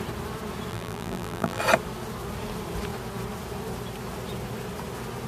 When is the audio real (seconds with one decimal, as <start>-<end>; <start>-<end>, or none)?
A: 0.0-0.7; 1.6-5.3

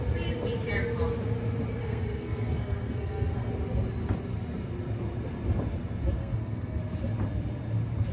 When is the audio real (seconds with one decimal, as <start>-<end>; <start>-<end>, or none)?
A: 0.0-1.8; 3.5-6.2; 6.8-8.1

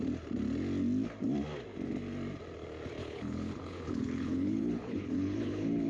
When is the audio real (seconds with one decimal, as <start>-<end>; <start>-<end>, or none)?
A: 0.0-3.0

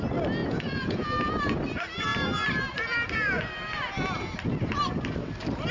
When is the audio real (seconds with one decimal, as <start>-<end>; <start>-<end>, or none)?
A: 0.0-0.4; 1.3-5.7

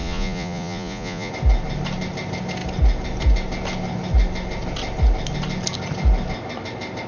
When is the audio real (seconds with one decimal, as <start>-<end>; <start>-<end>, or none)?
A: 1.3-7.1

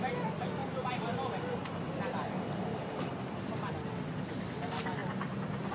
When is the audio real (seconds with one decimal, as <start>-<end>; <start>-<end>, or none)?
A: 0.0-0.6; 3.7-5.7